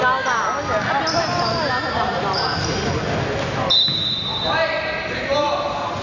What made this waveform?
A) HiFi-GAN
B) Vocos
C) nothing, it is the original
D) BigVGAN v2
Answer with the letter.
C